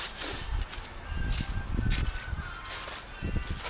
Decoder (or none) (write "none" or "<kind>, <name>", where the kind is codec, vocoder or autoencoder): none